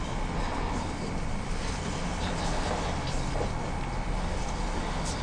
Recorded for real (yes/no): yes